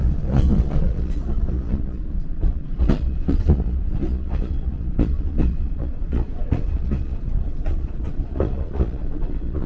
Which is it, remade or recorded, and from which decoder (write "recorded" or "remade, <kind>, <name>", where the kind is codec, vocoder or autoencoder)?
remade, vocoder, Vocos